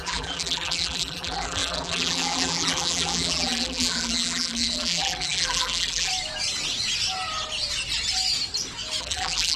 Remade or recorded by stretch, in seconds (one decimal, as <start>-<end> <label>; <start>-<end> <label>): 0.0-6.1 remade; 6.1-9.0 recorded; 9.0-9.6 remade